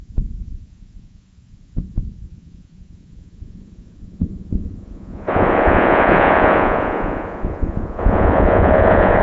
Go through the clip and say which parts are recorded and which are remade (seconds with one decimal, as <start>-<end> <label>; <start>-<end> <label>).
0.0-9.2 remade